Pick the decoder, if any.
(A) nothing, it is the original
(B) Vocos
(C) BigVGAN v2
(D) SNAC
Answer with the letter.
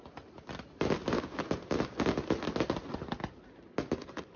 A